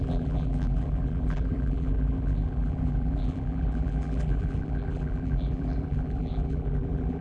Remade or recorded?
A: remade